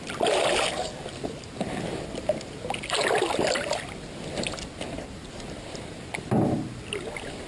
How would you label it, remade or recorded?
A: recorded